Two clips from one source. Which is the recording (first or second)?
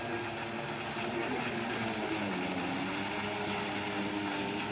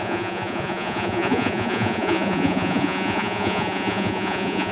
first